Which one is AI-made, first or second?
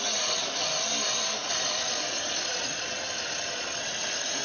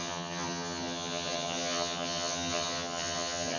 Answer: second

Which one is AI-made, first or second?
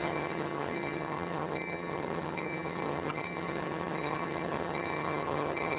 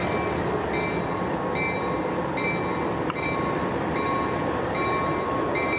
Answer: first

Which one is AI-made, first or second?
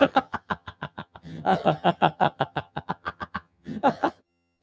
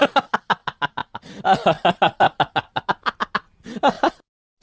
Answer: first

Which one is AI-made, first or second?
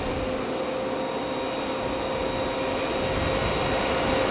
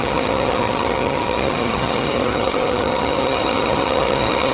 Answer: second